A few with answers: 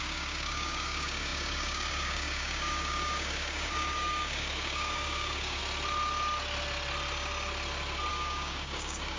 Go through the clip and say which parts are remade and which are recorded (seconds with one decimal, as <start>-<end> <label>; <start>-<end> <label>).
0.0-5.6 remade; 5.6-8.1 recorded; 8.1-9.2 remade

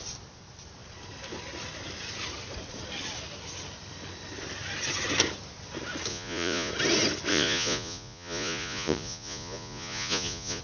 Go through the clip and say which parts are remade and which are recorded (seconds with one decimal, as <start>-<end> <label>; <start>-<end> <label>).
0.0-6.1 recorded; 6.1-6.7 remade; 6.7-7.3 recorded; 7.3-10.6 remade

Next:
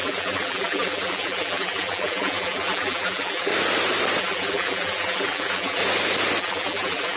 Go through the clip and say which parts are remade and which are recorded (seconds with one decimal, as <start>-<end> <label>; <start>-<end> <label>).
0.0-3.5 remade; 3.5-4.2 recorded; 4.2-5.8 remade; 5.8-6.4 recorded; 6.4-7.2 remade

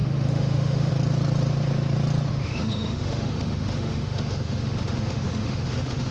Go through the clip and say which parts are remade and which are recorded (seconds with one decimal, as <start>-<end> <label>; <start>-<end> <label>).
0.0-0.9 remade; 0.9-2.3 recorded; 2.3-6.1 remade

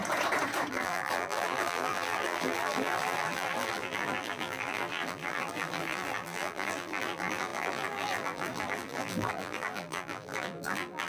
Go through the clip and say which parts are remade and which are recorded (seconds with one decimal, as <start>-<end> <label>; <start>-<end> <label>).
0.0-0.7 recorded; 0.7-11.1 remade